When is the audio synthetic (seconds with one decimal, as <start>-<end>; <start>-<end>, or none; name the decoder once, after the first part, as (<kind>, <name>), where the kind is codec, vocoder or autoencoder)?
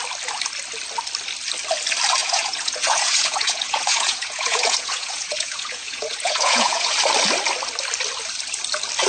2.2-6.9 (vocoder, Vocos)